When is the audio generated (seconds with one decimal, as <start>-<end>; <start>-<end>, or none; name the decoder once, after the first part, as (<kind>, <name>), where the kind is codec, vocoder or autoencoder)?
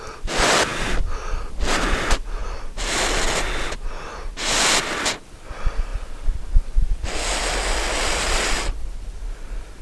0.0-0.7 (vocoder, BigVGAN v2); 1.4-2.4; 4.6-9.8